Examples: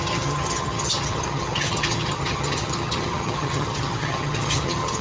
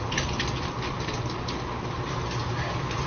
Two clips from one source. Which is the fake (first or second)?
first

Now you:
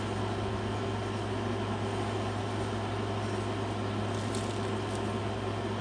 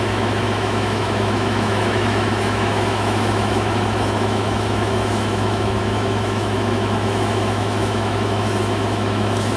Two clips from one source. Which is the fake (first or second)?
second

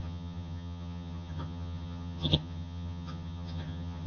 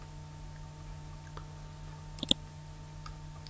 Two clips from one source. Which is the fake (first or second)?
first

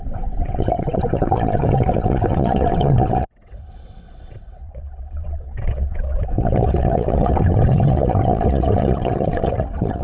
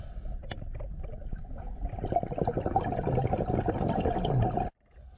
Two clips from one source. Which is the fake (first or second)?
first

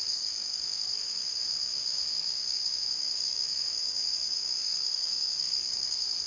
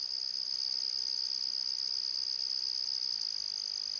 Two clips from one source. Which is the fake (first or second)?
first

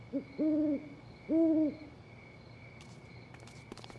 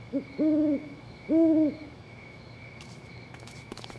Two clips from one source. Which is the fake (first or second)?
second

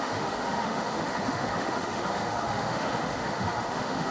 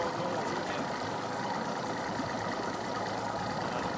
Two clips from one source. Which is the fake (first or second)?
first